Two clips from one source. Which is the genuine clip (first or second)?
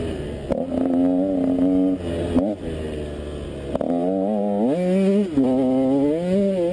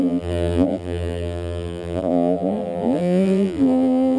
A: first